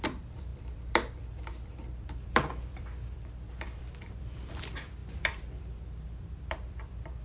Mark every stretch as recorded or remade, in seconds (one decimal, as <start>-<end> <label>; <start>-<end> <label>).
0.0-7.2 remade